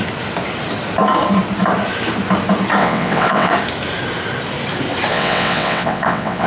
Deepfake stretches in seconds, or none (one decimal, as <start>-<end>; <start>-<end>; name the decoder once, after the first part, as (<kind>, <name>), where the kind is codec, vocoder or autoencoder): 2.8-3.5 (vocoder, WaveNeXt); 5.1-6.5